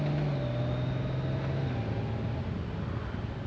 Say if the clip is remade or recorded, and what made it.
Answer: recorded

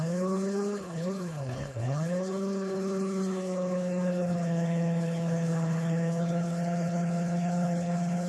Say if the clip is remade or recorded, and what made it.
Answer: remade, codec, HILCodec